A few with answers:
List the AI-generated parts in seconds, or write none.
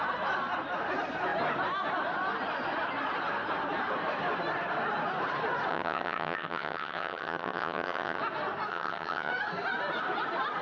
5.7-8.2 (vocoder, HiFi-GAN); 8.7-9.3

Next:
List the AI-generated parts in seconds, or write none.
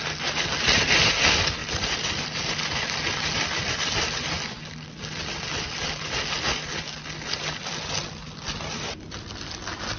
none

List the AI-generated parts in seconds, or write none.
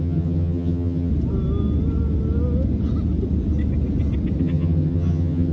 0.0-1.1 (vocoder, HiFi-GAN); 4.4-5.5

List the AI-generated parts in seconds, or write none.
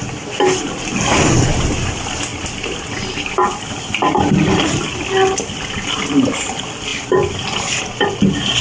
none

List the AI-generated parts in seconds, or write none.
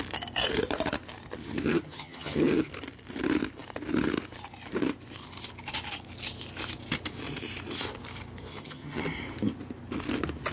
1.4-2.7 (vocoder, HiFi-GAN); 8.5-9.0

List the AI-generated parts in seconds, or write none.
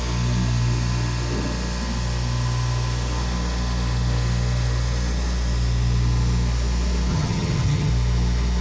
7.1-7.9 (vocoder, HiFi-GAN)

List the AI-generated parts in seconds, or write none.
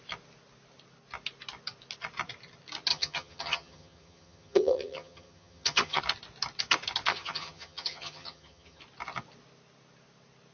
2.9-6.0 (vocoder, HiFi-GAN); 7.1-8.8